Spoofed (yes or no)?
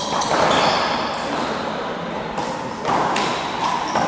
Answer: yes